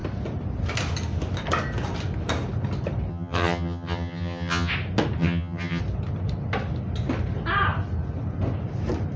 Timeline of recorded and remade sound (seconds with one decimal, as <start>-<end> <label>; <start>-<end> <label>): 0.0-3.1 recorded; 3.1-4.7 remade; 4.7-5.2 recorded; 5.2-5.8 remade; 5.8-9.2 recorded